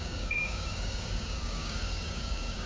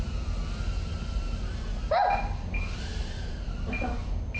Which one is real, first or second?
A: second